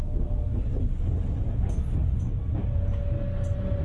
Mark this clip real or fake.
real